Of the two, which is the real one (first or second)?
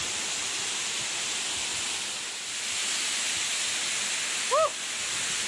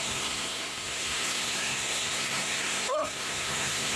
first